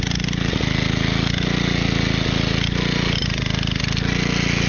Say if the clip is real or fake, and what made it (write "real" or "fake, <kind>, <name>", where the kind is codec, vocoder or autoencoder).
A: real